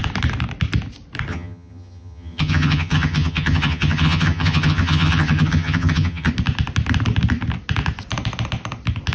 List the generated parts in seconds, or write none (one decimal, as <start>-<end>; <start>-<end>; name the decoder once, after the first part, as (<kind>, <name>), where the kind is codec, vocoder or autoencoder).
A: 1.3-6.3 (vocoder, HiFi-GAN)